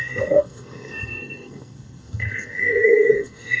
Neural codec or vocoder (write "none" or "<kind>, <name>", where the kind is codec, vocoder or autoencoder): codec, SNAC